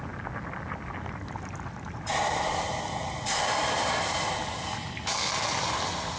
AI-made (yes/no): no